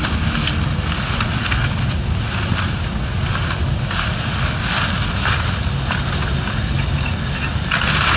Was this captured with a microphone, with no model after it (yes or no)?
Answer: yes